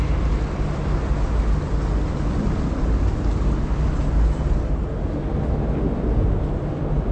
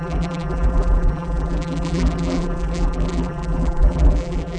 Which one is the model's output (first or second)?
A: second